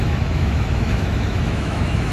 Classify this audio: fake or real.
fake